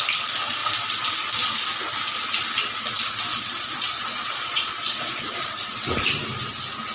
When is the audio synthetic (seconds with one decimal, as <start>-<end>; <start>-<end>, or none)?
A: 3.3-5.5